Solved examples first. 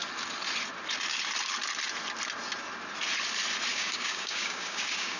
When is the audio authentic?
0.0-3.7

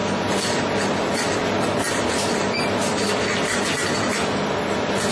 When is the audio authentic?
0.0-5.1

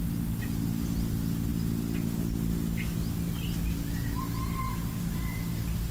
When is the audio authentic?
0.0-5.9

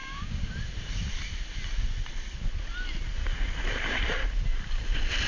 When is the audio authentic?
0.5-5.3

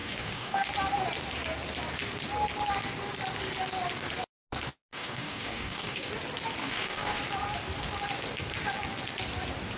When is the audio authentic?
0.7-4.9; 6.1-6.6; 7.2-9.8